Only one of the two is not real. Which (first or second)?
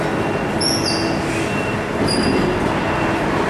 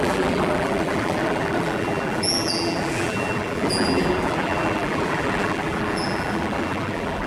second